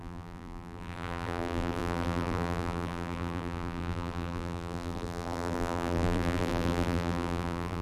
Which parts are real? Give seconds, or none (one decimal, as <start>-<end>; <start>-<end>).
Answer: none